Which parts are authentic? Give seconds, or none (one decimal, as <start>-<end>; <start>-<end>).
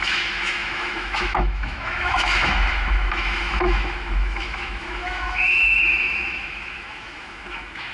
none